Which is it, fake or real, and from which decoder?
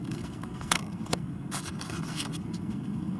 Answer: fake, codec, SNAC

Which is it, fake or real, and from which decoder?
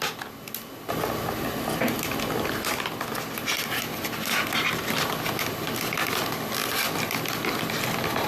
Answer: real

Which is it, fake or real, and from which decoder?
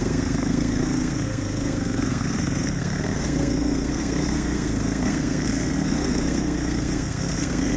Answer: fake, codec, SNAC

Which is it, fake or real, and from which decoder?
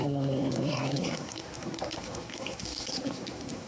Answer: fake, codec, SNAC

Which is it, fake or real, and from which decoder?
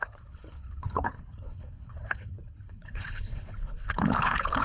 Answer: fake, codec, HILCodec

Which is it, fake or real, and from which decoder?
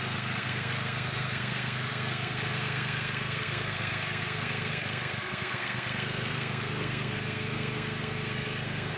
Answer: fake, codec, SNAC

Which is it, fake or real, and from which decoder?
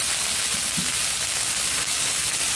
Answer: real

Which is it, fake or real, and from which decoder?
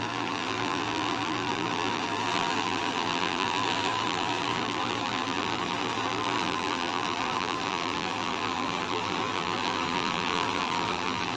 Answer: fake, vocoder, BigVGAN v2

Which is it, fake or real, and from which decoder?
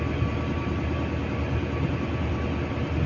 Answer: real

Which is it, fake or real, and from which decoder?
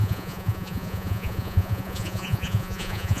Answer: fake, vocoder, Vocos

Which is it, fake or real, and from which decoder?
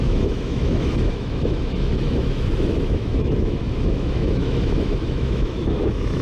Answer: fake, autoencoder, DAC-VAE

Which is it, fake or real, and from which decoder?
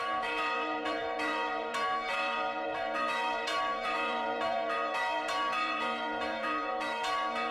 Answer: fake, vocoder, Vocos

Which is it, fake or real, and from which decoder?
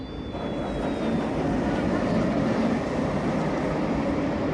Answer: real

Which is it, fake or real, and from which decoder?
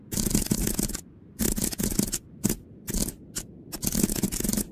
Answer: fake, vocoder, BigVGAN v2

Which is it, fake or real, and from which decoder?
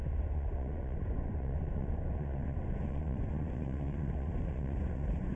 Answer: fake, vocoder, Vocos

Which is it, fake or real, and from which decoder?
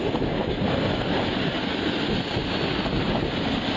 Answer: real